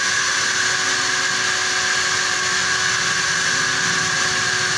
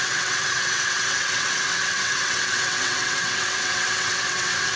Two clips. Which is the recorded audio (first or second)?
first